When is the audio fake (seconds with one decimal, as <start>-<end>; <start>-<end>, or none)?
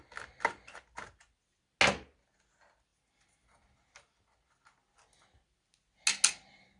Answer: none